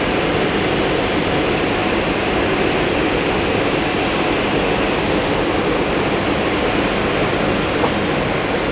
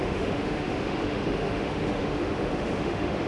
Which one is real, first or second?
first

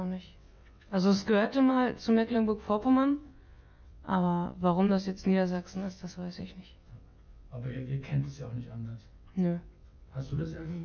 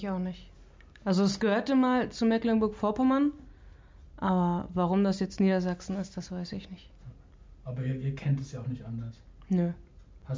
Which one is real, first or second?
second